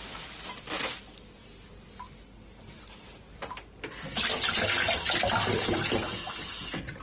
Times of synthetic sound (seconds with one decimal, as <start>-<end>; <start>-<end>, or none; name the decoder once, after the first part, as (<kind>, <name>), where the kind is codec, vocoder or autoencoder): none